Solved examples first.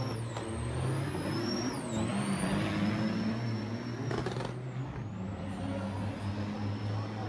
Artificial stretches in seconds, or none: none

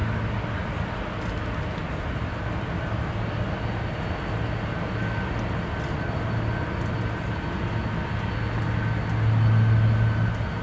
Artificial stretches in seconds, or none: none